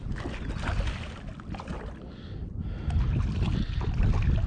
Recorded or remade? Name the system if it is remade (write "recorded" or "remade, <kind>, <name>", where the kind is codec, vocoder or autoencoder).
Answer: recorded